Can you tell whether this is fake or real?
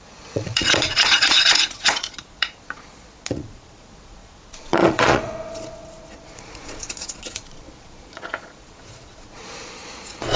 fake